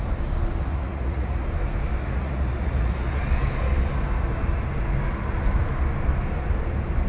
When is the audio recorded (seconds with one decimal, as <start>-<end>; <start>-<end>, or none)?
0.0-0.7; 1.4-2.0; 3.2-7.1